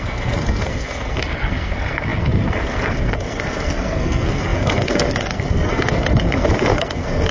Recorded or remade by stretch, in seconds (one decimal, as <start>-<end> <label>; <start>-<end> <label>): 0.0-7.3 remade